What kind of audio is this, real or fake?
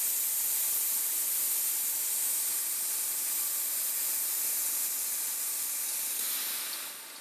real